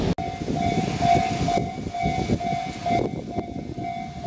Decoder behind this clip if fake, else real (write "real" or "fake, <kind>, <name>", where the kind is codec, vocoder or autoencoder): real